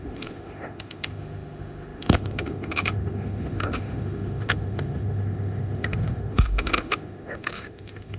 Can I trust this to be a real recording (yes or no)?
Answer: no